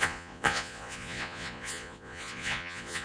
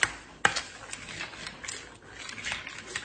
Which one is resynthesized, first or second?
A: first